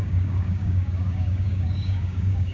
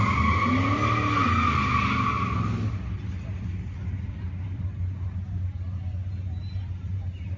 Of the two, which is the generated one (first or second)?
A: first